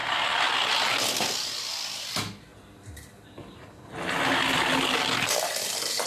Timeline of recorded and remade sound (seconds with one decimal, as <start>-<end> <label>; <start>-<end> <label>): 0.0-6.1 recorded